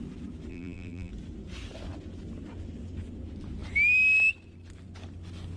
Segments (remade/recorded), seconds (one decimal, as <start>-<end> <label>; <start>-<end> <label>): 0.0-0.5 recorded; 0.5-1.1 remade; 1.1-5.6 recorded